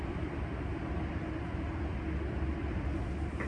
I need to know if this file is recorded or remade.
recorded